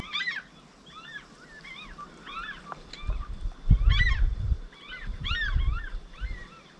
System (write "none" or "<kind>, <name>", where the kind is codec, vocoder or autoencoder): none